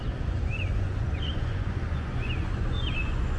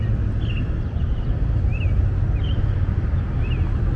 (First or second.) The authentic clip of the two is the second